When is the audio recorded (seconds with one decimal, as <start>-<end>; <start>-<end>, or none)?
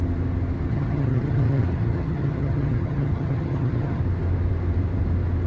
0.0-0.7; 4.0-5.5